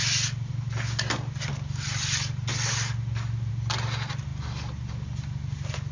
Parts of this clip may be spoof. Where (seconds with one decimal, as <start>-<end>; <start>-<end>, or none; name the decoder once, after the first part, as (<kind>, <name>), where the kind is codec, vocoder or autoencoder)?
none

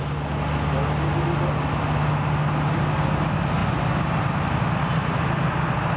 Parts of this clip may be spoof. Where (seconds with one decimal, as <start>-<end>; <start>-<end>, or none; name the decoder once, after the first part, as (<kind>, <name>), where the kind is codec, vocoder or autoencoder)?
none

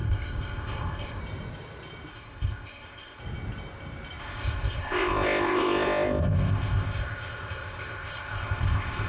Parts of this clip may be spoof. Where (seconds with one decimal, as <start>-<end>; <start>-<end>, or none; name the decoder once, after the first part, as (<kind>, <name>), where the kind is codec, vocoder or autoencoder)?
0.0-1.2 (codec, ZipCodec); 2.1-3.2; 4.2-9.1

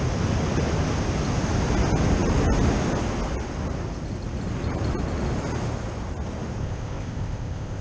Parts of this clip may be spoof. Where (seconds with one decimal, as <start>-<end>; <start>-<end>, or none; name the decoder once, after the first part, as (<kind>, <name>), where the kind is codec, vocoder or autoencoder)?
6.6-7.8 (codec, ZipCodec)

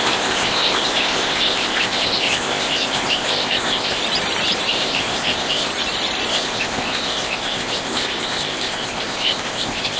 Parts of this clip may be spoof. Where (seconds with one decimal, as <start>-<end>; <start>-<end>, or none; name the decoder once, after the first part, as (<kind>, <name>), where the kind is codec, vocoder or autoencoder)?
0.0-4.0 (codec, ZipCodec); 4.7-5.7; 6.3-10.0